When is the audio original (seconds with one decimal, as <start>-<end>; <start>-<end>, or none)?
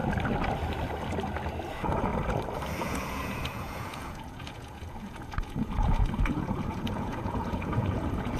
0.0-1.7; 2.1-2.8